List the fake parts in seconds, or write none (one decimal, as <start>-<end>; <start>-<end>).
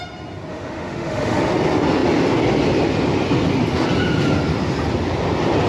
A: 0.5-1.4